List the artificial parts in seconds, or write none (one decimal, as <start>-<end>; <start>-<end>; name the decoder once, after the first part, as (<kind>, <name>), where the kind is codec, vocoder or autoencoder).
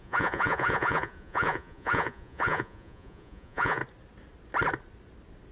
0.0-3.8 (vocoder, Vocos)